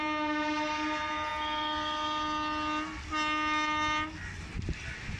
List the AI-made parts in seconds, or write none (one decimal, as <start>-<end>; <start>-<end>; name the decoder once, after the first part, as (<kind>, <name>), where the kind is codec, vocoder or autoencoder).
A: none